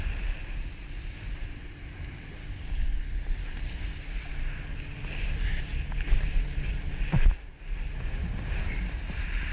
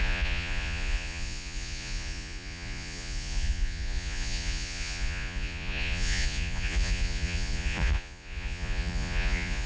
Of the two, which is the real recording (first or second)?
first